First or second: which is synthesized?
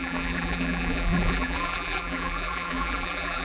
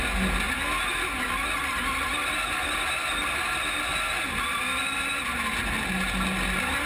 first